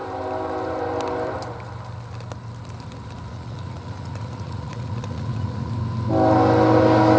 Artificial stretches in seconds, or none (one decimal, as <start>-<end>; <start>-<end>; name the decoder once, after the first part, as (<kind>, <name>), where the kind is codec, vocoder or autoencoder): 3.3-5.7 (vocoder, Vocos)